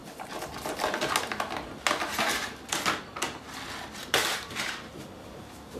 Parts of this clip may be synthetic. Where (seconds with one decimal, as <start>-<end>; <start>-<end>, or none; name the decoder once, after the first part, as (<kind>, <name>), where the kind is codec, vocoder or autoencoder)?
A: 4.0-5.8 (vocoder, BigVGAN v2)